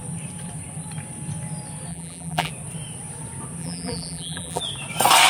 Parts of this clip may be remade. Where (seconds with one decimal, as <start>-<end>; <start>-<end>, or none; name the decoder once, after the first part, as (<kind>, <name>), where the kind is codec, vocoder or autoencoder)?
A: 1.9-2.5 (vocoder, BigVGAN v2); 3.6-4.6